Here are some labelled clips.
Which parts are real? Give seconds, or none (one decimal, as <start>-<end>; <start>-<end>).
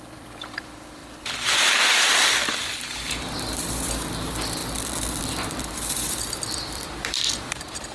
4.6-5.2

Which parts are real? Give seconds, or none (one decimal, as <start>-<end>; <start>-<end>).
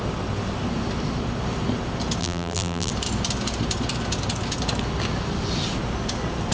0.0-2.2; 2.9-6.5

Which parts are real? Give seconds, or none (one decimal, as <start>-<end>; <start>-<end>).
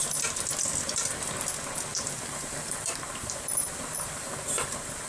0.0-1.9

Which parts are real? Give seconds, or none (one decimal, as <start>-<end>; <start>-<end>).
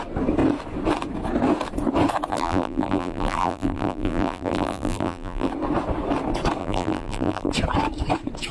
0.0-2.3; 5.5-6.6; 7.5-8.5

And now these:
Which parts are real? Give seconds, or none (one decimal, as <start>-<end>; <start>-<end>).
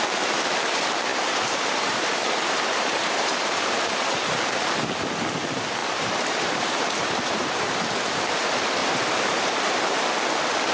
0.0-1.1; 4.4-5.8; 7.9-8.8; 10.0-10.7